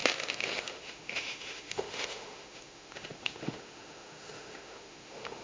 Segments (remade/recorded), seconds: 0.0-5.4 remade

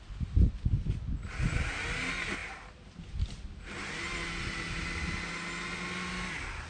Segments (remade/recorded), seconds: 0.0-6.7 recorded